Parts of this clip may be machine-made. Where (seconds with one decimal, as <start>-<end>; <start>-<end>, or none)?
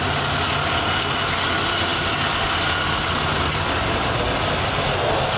none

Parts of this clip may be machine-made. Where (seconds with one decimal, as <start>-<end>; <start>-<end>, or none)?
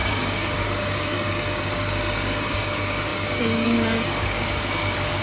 0.0-5.2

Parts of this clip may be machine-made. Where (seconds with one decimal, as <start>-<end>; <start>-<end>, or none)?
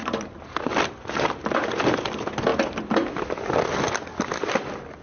none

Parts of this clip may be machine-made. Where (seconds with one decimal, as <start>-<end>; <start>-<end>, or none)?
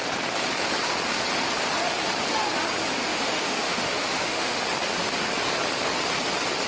3.1-4.6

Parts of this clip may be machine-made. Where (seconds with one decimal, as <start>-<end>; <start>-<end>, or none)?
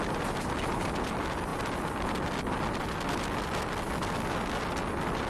none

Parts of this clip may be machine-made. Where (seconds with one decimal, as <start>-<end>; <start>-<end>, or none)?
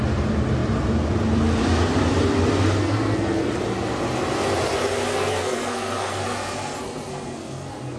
2.8-3.5; 5.1-8.0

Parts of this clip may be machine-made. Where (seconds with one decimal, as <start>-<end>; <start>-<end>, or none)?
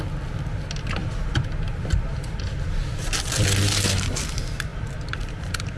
1.0-1.5; 2.1-2.8; 4.7-5.8